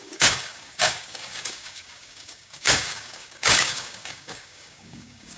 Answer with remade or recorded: remade